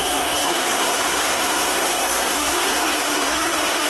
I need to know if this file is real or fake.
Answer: fake